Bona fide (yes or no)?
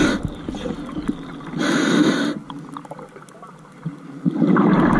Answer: yes